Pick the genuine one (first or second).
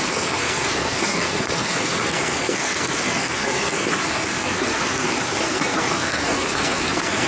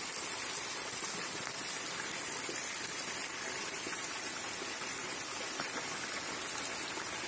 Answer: second